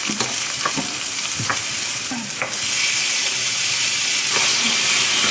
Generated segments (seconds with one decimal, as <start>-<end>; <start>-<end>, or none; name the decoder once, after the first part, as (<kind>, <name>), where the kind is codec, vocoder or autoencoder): 1.5-3.6 (vocoder, BigVGAN v2)